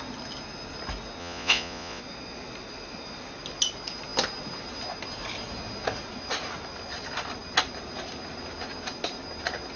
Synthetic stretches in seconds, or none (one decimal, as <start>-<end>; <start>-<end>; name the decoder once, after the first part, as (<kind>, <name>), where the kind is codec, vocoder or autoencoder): 1.2-2.0 (vocoder, Vocos)